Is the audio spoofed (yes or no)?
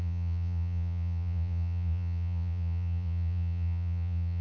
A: yes